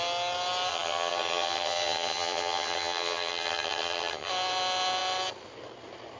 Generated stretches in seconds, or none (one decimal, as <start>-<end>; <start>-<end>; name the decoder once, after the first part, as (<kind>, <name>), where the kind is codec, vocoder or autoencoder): 0.7-4.3 (vocoder, HiFi-GAN)